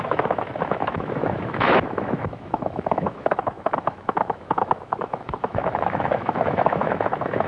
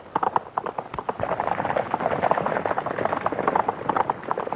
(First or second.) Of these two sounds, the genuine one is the second